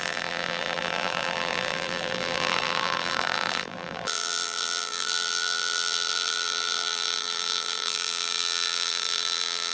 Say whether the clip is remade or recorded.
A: remade